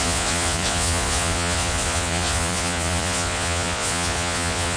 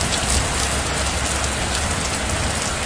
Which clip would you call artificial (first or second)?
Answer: first